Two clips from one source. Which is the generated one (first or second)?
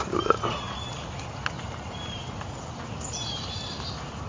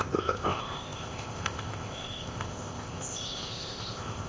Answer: second